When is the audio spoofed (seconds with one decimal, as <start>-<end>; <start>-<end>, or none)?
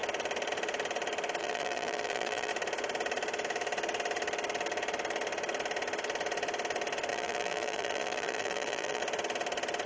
1.4-2.5; 7.1-9.0